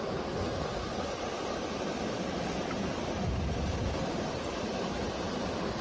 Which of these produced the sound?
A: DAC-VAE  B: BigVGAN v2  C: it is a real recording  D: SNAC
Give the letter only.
B